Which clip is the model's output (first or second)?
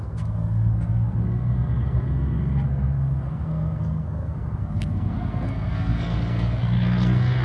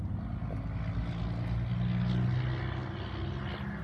first